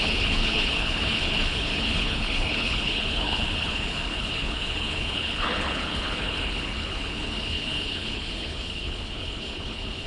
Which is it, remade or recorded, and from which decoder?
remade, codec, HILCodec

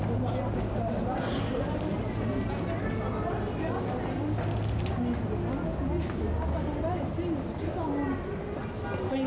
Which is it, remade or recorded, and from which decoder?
recorded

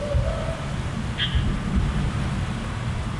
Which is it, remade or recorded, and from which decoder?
recorded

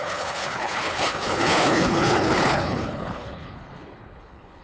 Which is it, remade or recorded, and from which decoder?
remade, codec, HILCodec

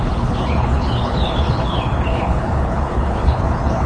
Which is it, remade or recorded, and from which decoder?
remade, codec, HILCodec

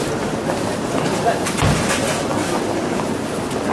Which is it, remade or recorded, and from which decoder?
recorded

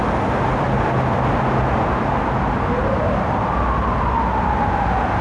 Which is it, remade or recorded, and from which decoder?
recorded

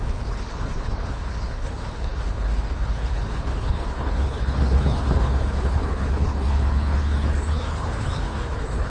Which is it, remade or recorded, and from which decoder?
remade, codec, HILCodec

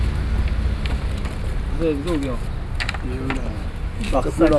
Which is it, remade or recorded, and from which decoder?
recorded